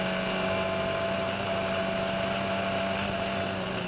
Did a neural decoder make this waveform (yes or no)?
no